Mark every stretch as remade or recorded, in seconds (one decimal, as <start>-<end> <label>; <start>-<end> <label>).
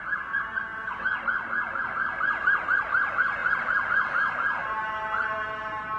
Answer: 0.0-4.6 recorded; 4.6-6.0 remade